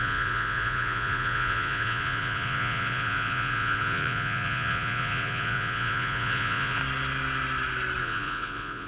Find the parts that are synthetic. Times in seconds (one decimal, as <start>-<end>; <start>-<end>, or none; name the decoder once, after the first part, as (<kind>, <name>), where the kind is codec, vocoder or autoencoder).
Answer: 0.0-6.8 (vocoder, Vocos); 8.0-8.9